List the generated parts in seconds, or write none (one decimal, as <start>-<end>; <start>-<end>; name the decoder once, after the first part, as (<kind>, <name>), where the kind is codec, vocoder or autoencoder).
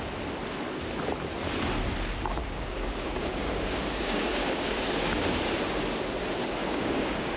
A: 2.4-5.4 (codec, DAC); 6.6-7.4